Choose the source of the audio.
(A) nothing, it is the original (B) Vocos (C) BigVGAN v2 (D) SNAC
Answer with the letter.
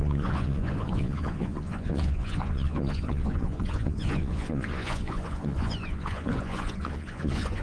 B